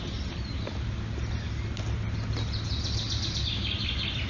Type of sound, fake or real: real